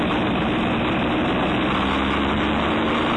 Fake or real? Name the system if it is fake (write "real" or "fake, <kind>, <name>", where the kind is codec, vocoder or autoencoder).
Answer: real